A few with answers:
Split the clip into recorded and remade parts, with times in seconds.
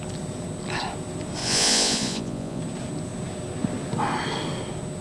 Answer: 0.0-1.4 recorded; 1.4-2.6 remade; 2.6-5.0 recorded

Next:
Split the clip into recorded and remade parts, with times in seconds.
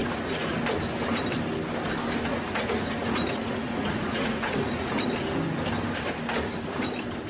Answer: 0.0-0.5 remade; 0.5-2.3 recorded; 2.3-4.9 remade; 4.9-7.3 recorded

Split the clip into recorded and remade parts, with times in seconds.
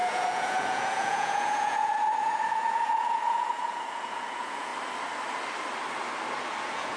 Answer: 0.0-4.7 remade; 4.7-6.6 recorded; 6.6-7.0 remade